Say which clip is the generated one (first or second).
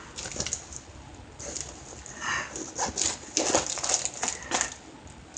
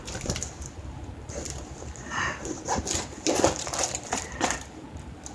second